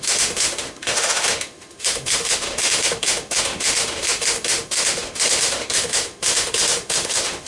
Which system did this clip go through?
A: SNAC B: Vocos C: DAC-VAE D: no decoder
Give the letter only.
C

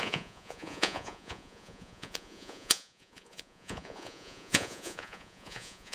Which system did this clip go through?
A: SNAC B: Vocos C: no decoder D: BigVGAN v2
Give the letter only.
B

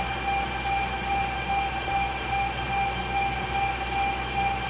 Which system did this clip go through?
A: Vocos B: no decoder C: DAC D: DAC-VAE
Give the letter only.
B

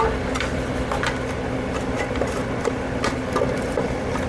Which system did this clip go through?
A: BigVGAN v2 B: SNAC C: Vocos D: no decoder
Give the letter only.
A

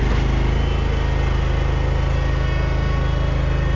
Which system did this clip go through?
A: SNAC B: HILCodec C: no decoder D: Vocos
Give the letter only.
C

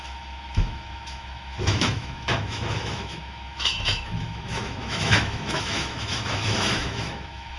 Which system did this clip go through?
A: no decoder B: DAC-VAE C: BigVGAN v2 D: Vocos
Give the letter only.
B